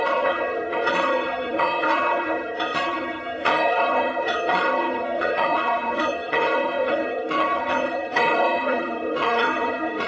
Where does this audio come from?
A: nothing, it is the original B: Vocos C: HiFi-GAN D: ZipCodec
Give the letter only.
C